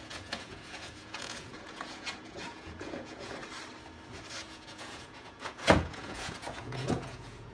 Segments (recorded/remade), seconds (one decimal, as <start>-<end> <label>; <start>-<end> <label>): 0.0-3.4 remade; 3.4-4.4 recorded; 4.4-7.5 remade

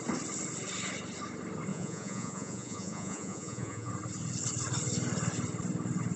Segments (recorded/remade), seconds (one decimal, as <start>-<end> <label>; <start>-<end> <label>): 0.0-1.7 recorded; 1.7-3.9 remade; 3.9-6.2 recorded